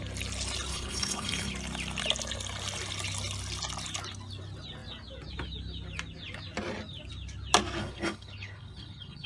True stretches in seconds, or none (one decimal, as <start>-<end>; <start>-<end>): 0.0-0.7; 1.5-7.8